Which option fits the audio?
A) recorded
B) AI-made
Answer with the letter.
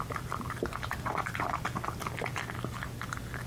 A